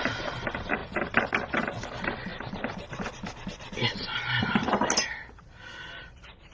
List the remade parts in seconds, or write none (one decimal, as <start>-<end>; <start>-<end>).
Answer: none